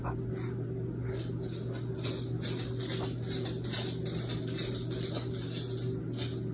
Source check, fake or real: real